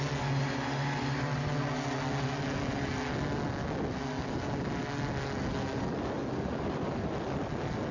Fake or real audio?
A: real